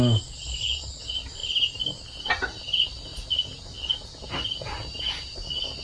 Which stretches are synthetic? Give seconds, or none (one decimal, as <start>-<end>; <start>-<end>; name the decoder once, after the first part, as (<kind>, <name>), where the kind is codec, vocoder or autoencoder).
3.1-3.8 (vocoder, BigVGAN v2)

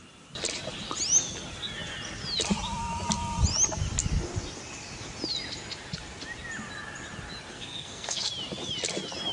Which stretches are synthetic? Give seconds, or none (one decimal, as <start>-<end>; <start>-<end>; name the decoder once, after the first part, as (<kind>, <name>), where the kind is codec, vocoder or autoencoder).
7.5-8.3 (codec, SNAC)

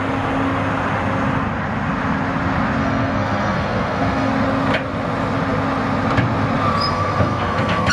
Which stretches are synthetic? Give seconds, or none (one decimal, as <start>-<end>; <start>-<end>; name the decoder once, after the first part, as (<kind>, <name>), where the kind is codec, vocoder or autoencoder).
2.8-4.3 (codec, SNAC); 6.9-7.9

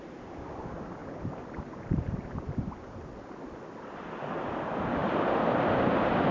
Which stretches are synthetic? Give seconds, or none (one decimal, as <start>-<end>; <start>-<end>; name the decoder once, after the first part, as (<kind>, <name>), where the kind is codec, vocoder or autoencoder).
1.0-3.2 (vocoder, BigVGAN v2)

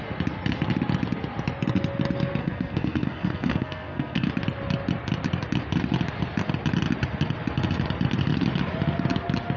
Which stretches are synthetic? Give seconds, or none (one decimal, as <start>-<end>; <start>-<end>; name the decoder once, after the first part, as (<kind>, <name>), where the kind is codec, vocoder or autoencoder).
2.4-4.3 (codec, SNAC)

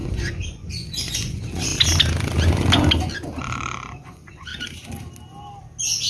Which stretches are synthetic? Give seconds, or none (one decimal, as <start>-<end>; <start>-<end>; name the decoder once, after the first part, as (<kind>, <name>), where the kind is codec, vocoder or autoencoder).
0.0-1.7 (vocoder, Vocos); 3.4-4.5

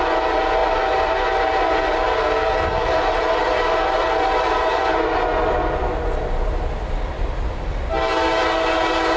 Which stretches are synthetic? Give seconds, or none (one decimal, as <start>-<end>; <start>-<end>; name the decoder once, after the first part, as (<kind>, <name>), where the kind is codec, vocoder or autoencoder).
2.8-4.8 (vocoder, BigVGAN v2)